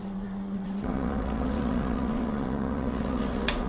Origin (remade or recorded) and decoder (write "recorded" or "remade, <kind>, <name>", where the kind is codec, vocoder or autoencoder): remade, vocoder, WaveNeXt